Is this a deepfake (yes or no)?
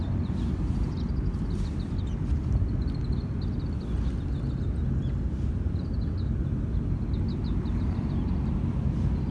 no